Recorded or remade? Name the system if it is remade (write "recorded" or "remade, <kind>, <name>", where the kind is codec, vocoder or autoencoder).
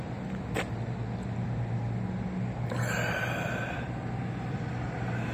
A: recorded